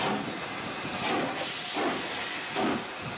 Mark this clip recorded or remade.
recorded